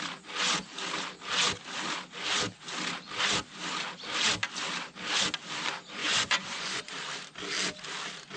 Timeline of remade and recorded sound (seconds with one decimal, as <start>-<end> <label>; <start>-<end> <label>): 0.0-6.0 recorded; 6.0-6.9 remade; 6.9-8.4 recorded